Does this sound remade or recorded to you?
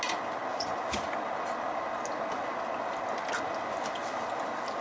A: recorded